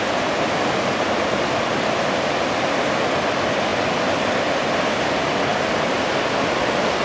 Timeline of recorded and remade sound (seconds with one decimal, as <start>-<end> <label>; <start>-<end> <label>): 0.0-7.0 recorded